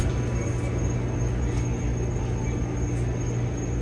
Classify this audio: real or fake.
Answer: real